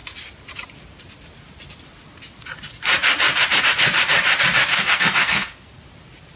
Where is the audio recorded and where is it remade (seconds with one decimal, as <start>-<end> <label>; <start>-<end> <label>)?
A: 0.0-4.7 recorded; 4.7-5.8 remade; 5.8-6.4 recorded